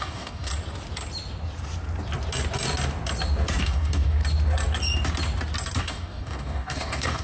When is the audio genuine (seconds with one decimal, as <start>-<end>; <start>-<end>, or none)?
0.5-3.6; 4.2-5.8